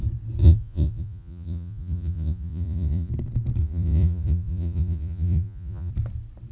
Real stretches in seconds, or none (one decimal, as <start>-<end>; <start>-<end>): 0.0-0.4; 3.1-3.6; 5.9-6.5